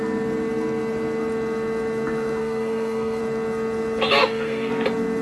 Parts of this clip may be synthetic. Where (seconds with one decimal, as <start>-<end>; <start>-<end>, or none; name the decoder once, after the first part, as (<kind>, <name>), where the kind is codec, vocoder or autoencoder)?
2.4-3.2 (codec, SNAC); 4.2-4.7

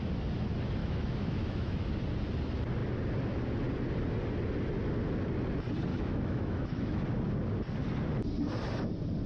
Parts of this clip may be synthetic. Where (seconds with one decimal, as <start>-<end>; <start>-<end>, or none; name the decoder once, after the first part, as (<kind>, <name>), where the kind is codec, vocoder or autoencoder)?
0.8-1.9 (autoencoder, DAC-VAE); 5.9-7.0

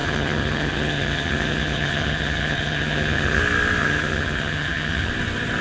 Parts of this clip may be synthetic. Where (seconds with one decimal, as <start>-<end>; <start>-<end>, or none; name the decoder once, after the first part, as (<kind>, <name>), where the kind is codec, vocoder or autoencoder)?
0.0-3.4 (vocoder, HiFi-GAN); 3.8-5.1

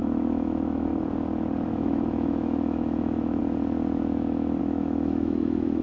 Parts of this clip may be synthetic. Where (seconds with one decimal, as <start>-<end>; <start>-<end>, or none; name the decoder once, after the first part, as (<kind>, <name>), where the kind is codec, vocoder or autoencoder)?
0.0-0.9 (autoencoder, DAC-VAE); 1.7-3.4; 4.6-5.8

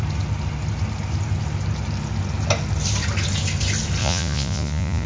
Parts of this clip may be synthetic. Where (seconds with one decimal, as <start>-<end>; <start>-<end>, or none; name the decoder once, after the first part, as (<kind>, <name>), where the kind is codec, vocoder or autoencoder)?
4.0-5.1 (vocoder, Vocos)

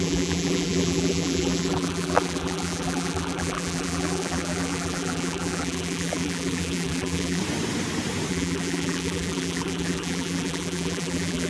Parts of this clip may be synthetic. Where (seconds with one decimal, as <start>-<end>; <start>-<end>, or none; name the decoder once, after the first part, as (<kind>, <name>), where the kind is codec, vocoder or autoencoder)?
0.0-7.4 (vocoder, BigVGAN v2); 8.3-11.5